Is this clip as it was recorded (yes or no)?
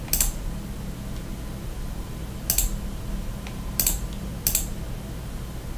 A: yes